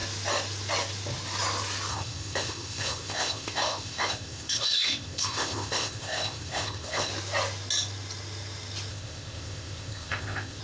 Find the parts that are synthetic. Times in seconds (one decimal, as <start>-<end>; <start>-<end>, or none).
1.9-7.1; 8.9-10.6